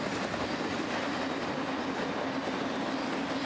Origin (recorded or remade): recorded